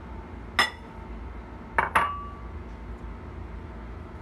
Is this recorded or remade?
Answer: recorded